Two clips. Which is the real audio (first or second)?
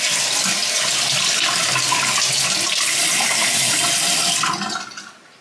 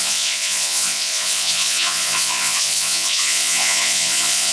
first